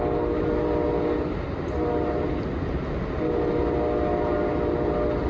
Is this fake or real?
real